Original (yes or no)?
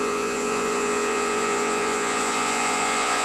no